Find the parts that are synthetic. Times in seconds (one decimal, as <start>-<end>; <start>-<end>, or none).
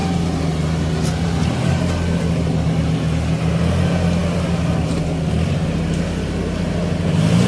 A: 0.0-1.8